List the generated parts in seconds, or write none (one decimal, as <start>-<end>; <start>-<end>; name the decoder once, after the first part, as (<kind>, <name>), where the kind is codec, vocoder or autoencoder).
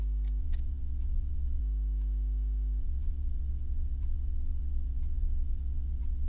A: 0.4-1.6 (vocoder, WaveNeXt); 2.8-6.3